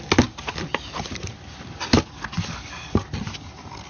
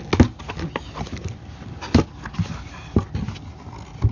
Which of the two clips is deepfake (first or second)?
first